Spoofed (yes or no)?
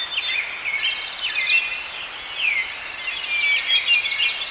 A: no